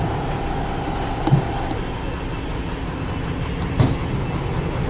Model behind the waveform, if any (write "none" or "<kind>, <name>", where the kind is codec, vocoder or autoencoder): none